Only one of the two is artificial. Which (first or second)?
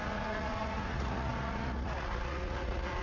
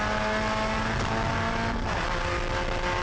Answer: first